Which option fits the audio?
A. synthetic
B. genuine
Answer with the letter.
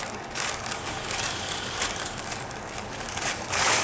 A